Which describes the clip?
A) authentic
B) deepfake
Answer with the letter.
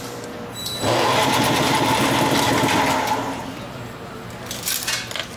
B